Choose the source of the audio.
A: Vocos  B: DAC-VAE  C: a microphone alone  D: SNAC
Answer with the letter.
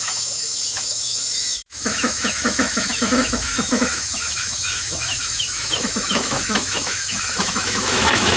B